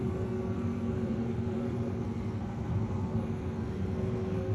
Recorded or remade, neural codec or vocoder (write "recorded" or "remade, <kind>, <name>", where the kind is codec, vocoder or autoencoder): remade, codec, SNAC